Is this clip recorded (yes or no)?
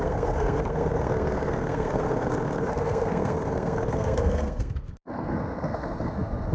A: no